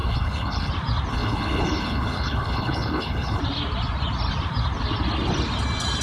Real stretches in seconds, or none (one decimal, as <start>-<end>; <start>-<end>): 0.7-1.1; 3.4-6.0